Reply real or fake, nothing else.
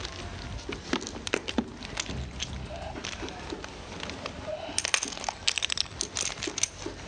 real